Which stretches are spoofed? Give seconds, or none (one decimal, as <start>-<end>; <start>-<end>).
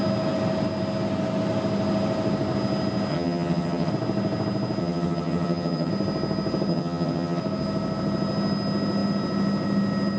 3.1-3.9; 4.8-5.9; 6.7-7.4